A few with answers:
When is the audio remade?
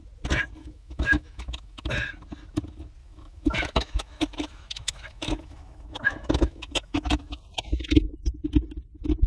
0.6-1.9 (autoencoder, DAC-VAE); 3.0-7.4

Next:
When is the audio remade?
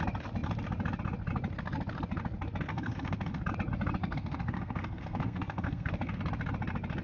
2.7-3.4 (codec, SNAC); 4.0-6.2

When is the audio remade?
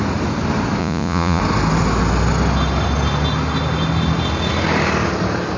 0.8-1.4 (vocoder, Vocos)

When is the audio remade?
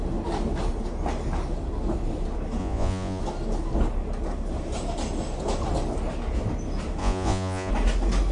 2.6-3.2 (vocoder, Vocos); 7.0-7.7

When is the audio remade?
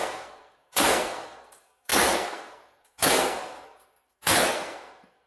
0.0-5.3 (codec, SNAC)